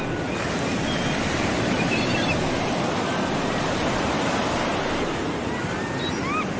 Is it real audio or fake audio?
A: real